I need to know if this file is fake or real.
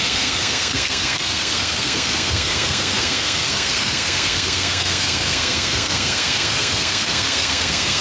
fake